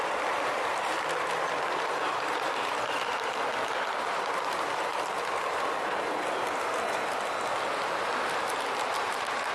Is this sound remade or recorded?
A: remade